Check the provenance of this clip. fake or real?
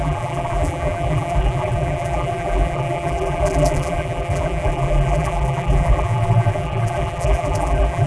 fake